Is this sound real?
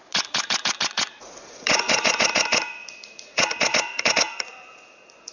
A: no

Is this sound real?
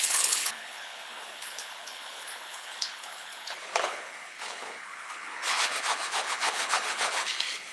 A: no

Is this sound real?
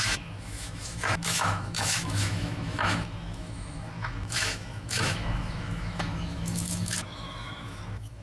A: no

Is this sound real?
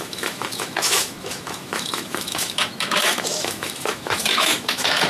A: no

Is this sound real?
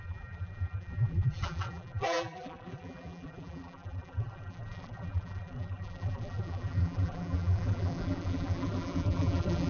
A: no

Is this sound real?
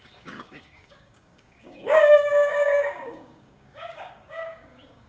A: no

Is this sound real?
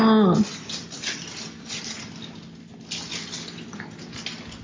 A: yes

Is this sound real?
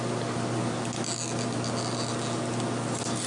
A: yes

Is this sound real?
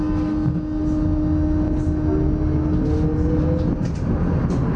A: yes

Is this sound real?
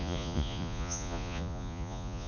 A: no